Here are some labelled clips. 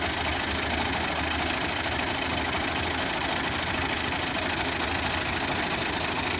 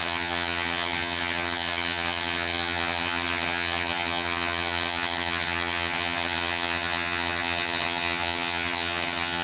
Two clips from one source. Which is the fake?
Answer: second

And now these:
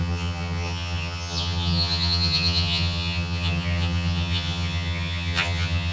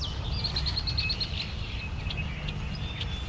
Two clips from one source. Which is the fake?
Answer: first